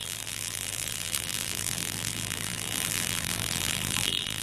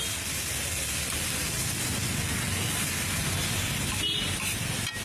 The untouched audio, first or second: second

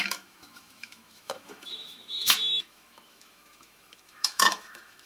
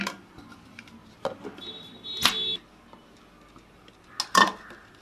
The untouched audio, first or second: second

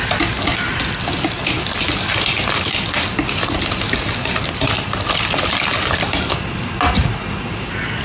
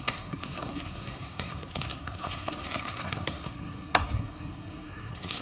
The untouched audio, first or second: first